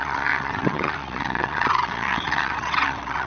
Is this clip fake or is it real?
fake